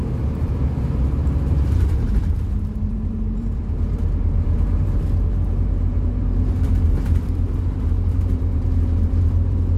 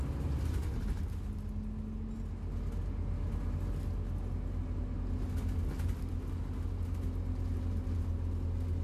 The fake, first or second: first